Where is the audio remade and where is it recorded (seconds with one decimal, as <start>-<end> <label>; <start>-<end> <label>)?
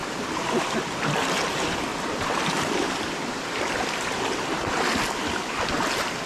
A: 0.0-1.0 remade; 1.0-1.9 recorded; 1.9-3.9 remade; 3.9-6.3 recorded